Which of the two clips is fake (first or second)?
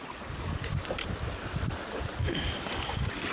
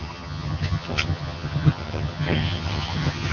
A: second